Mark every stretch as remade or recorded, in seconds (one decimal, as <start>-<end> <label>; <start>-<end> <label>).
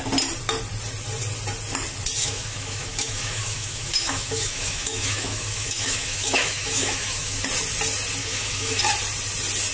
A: 0.0-2.2 recorded; 2.2-7.4 remade; 7.4-8.2 recorded; 8.2-8.8 remade; 8.8-9.7 recorded